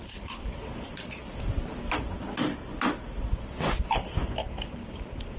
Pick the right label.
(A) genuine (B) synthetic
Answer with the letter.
A